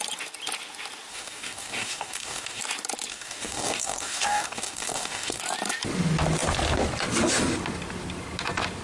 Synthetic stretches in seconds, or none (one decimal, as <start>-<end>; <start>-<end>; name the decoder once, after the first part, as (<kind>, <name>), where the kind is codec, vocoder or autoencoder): 1.1-2.6 (codec, DAC); 3.1-5.4